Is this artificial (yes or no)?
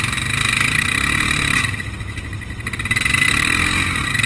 no